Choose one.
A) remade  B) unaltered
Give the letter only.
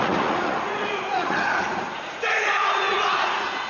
A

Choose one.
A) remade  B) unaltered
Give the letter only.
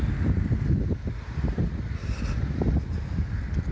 B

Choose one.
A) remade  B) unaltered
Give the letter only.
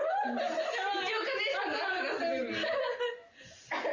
B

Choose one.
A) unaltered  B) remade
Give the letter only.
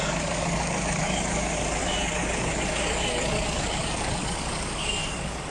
B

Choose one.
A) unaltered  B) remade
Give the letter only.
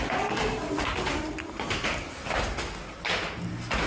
A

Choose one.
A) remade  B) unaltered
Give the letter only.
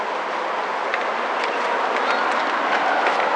B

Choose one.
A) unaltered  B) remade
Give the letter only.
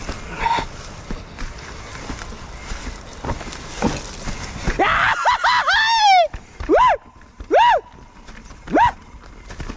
A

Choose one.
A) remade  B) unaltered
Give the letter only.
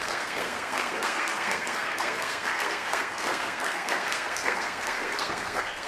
A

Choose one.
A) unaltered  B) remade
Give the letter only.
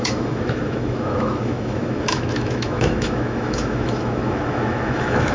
B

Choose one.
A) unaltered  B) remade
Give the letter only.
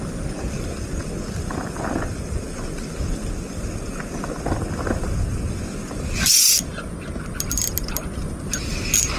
A